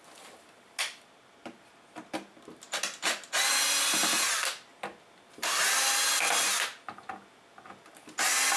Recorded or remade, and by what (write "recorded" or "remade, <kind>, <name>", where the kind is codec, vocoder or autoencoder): recorded